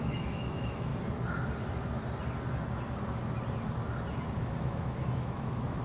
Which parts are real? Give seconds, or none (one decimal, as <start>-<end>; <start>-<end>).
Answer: 0.9-4.4